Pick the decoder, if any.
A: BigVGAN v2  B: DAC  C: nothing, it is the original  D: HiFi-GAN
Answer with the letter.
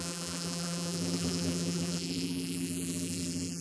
A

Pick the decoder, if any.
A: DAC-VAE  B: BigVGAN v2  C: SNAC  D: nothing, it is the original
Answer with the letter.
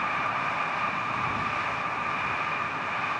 D